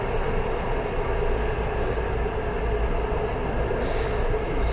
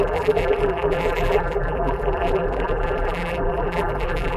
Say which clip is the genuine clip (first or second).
first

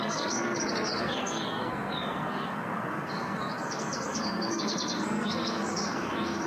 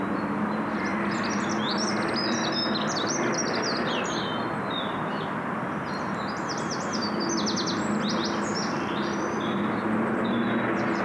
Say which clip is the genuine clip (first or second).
second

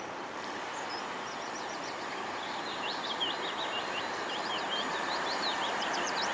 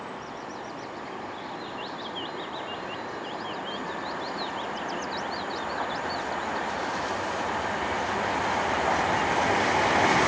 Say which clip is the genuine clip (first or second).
second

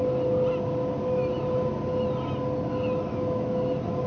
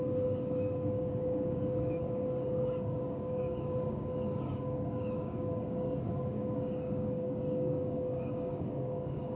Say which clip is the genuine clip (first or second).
first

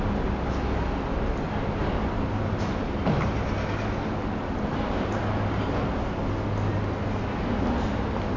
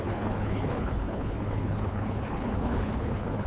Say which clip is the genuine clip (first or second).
first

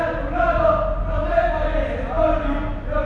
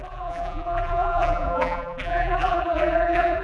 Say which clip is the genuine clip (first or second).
first